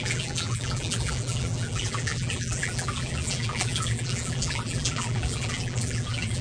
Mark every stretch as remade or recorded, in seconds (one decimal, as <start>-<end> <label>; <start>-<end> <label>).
0.0-6.4 remade